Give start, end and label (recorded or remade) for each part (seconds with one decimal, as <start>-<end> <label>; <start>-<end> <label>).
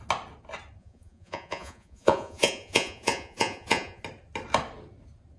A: 0.0-0.8 recorded; 0.8-4.0 remade; 4.0-5.4 recorded